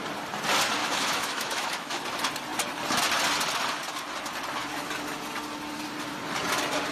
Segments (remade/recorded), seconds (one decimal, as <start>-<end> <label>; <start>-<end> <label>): 0.0-0.8 recorded; 0.8-2.0 remade; 2.0-6.9 recorded